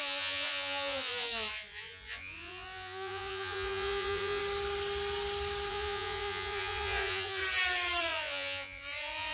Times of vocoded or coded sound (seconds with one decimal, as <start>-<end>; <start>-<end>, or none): 0.0-4.4; 5.7-7.4; 8.0-9.3